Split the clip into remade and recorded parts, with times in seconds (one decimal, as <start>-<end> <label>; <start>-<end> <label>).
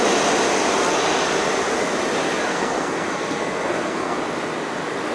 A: 0.0-2.5 recorded; 2.5-4.2 remade; 4.2-5.1 recorded